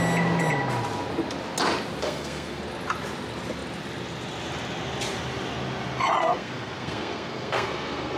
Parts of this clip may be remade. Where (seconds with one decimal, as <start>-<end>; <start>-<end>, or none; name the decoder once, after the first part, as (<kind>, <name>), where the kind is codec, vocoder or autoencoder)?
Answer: 2.0-2.6 (codec, SNAC); 6.2-8.2